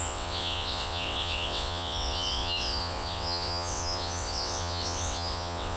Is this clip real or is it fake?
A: fake